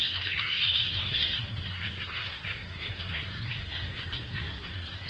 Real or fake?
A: fake